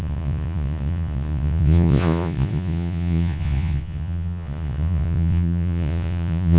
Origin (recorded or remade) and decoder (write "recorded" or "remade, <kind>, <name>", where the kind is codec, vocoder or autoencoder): remade, vocoder, Vocos